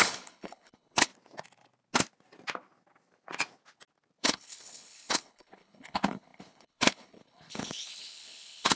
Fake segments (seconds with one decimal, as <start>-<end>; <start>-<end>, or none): 0.0-1.1; 4.2-8.8